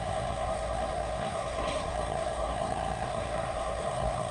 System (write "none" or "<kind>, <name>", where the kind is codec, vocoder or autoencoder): codec, SNAC